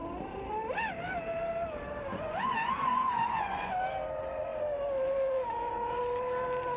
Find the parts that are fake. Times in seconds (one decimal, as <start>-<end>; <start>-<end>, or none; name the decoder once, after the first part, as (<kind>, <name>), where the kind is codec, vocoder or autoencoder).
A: 2.1-3.7 (vocoder, Vocos)